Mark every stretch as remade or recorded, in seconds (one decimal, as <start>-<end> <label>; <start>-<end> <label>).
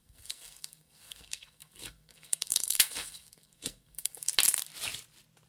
0.0-4.3 remade; 4.3-5.5 recorded